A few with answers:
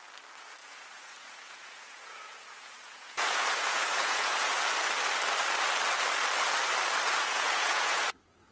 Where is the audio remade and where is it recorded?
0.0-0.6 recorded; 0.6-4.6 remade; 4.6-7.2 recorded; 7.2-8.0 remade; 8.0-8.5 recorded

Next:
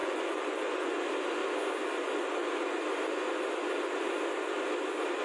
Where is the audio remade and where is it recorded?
0.0-0.9 remade; 0.9-5.2 recorded

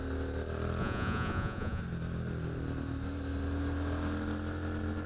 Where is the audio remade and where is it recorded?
0.0-0.8 recorded; 0.8-1.8 remade; 1.8-5.1 recorded

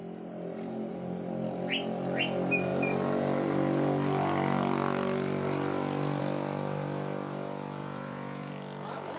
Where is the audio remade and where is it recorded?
0.0-7.8 recorded; 7.8-8.5 remade; 8.5-9.2 recorded

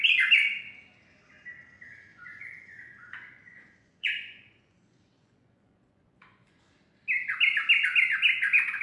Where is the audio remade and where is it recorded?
0.0-2.1 recorded; 2.1-6.7 remade; 6.7-8.8 recorded

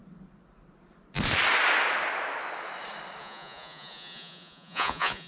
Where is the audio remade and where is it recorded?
0.0-3.2 recorded; 3.2-5.3 remade

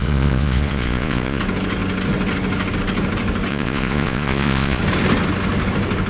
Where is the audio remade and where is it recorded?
0.0-1.4 remade; 1.4-3.5 recorded; 3.5-4.8 remade; 4.8-6.1 recorded